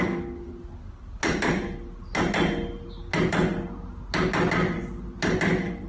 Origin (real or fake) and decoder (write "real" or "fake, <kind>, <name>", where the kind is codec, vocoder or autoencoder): real